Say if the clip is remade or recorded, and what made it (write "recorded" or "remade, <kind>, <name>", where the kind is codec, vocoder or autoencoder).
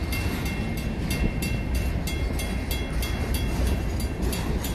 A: recorded